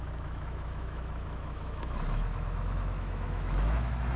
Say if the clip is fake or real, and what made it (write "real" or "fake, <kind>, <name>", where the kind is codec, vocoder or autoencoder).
fake, autoencoder, DAC-VAE